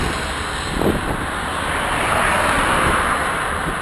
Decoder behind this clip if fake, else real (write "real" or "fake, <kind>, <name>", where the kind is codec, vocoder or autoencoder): real